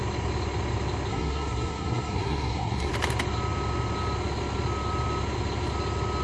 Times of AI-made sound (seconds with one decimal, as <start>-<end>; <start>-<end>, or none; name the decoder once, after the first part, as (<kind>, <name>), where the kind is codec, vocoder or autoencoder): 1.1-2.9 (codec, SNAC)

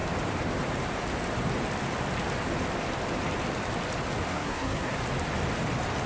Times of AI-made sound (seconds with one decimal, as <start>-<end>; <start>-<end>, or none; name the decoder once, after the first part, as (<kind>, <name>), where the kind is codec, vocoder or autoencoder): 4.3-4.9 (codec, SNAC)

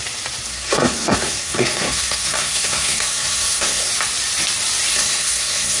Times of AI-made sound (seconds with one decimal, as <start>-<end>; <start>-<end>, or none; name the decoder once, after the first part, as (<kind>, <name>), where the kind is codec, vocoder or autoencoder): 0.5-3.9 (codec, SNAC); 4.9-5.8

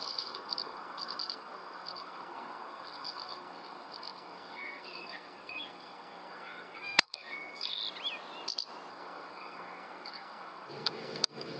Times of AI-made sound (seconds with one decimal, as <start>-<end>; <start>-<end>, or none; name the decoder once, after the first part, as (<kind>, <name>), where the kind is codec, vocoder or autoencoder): 0.0-7.8 (codec, SNAC); 8.9-11.6

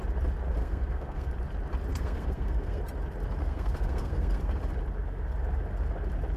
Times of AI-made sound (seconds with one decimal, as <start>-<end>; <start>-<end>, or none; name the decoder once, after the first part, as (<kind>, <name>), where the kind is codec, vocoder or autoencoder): 0.6-1.3 (codec, SNAC); 1.9-2.8; 3.4-4.6

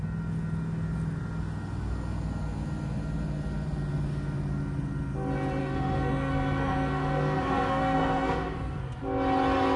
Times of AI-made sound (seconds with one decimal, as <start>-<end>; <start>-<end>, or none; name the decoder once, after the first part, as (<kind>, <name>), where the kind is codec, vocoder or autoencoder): 5.6-8.8 (codec, SNAC)

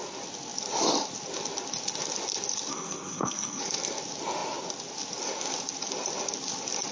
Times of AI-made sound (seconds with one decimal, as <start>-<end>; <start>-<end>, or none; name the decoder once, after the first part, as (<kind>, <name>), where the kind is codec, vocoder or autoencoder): 2.7-3.6 (codec, SNAC)